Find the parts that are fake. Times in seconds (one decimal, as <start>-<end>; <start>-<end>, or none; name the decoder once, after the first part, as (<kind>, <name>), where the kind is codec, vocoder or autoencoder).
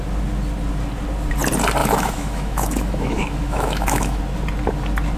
1.8-4.2 (autoencoder, DAC-VAE)